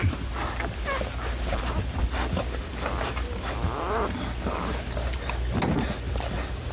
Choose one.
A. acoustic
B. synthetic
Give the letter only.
A